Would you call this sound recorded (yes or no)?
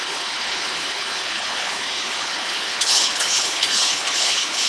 no